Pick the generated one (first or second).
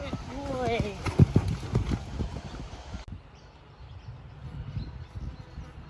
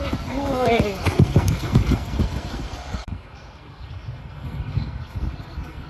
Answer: second